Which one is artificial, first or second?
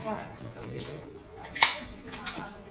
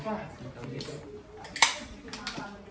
first